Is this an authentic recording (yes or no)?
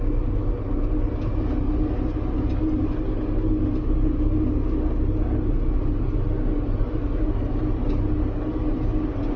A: yes